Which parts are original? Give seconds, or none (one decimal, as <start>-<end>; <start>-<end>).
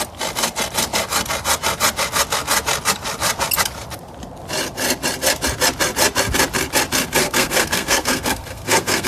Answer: 0.0-7.2